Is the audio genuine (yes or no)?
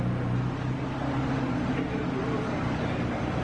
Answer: yes